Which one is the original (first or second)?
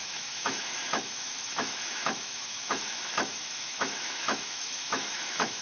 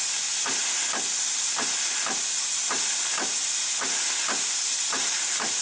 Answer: second